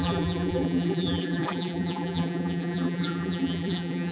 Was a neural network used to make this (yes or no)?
yes